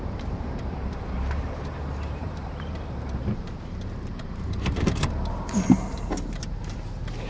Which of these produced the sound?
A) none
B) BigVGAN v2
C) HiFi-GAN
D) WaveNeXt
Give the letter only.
B